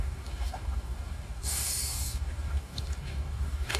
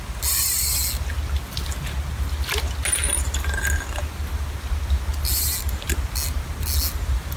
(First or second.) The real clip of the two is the second